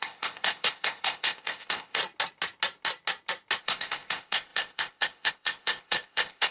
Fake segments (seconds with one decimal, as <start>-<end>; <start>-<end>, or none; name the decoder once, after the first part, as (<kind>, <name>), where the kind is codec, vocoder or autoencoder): 0.0-2.0 (codec, ZipCodec); 3.6-6.5